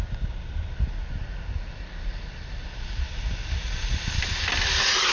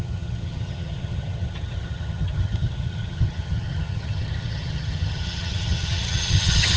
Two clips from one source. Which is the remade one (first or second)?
second